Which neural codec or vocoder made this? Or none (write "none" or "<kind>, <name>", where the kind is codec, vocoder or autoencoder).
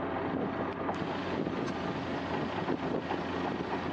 none